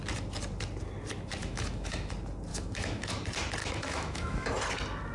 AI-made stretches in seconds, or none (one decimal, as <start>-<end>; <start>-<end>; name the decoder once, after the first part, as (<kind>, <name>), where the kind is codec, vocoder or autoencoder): 1.4-2.1 (autoencoder, DAC-VAE); 2.5-3.1; 3.6-4.5